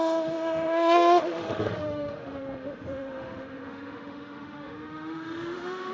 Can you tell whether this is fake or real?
fake